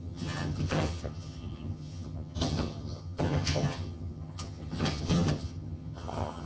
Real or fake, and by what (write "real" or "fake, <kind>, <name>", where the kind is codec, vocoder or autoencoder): fake, vocoder, HiFi-GAN